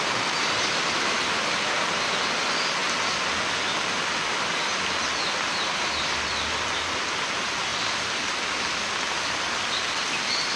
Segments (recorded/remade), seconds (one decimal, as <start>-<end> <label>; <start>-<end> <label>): 0.0-7.7 recorded; 7.7-8.3 remade; 8.3-10.6 recorded